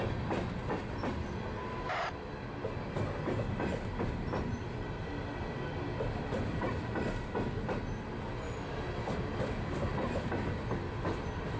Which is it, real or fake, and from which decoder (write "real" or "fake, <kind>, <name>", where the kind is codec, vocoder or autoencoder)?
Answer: real